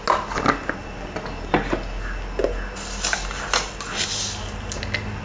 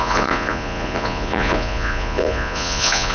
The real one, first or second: first